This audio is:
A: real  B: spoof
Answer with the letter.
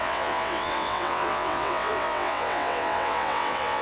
B